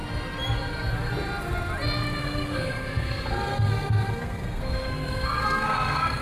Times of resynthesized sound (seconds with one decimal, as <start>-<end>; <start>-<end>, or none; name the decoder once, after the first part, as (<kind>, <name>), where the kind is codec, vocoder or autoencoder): 2.2-6.2 (codec, SNAC)